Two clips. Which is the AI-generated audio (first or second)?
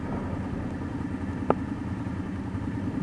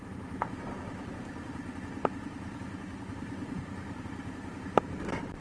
second